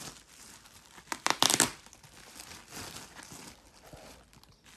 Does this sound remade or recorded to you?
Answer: recorded